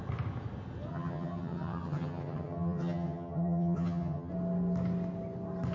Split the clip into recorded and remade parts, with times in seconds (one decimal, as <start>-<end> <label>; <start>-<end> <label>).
0.0-0.9 recorded; 0.9-4.3 remade; 4.3-5.7 recorded